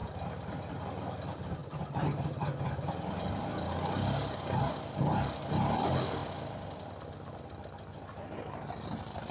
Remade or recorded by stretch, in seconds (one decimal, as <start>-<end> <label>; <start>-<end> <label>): 0.0-9.3 recorded